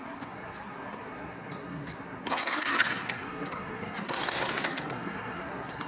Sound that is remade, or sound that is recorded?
remade